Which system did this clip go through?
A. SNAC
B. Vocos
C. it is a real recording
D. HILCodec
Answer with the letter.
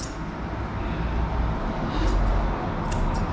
C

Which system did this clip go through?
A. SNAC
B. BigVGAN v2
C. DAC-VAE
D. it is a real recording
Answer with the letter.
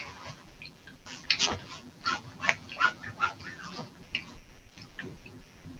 B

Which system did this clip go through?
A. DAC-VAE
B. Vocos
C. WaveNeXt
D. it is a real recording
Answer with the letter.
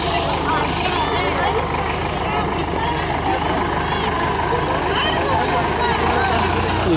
D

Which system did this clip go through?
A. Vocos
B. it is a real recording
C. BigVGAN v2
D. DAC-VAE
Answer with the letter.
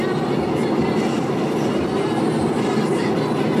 B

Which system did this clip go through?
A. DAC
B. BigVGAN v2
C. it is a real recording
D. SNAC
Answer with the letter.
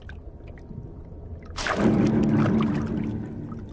C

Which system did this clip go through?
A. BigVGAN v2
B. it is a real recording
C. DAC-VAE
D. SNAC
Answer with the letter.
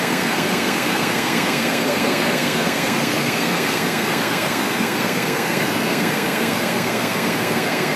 D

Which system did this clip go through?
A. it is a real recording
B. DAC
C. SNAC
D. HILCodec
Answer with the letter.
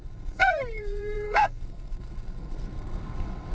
C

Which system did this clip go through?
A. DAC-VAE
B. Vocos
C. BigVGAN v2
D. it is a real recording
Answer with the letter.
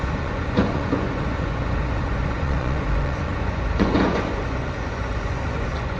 B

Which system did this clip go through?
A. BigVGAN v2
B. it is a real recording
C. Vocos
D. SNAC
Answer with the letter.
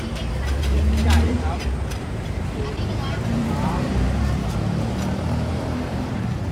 A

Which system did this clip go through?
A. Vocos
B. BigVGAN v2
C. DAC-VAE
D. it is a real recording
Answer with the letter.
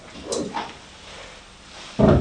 D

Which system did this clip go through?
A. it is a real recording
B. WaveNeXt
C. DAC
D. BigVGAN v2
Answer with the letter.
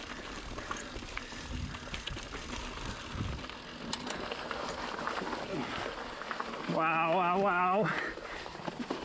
A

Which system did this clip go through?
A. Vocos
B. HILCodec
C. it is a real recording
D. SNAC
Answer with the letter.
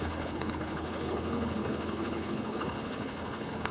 B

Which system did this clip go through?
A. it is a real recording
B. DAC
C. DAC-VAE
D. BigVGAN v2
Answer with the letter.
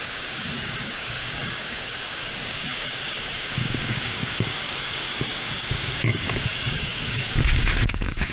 B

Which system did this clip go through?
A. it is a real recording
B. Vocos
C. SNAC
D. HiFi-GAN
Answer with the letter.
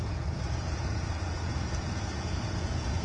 B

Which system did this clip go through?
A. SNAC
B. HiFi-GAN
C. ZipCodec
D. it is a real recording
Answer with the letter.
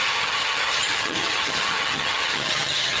B